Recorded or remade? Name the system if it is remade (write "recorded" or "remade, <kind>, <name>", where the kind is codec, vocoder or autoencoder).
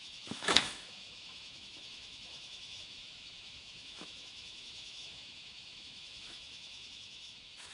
remade, autoencoder, DAC-VAE